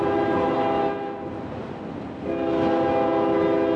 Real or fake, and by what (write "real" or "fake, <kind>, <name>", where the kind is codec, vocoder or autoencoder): real